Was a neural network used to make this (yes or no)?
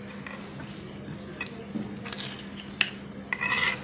no